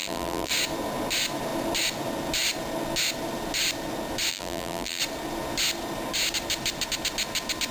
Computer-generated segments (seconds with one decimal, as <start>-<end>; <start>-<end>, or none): 0.0-0.5; 4.3-5.0